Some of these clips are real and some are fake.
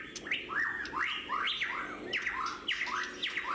real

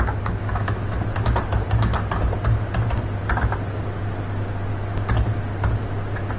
real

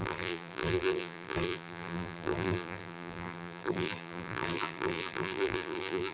fake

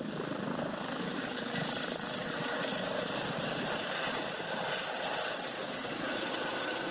real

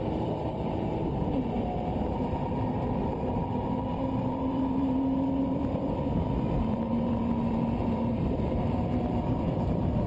fake